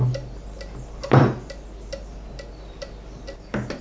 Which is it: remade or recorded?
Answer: recorded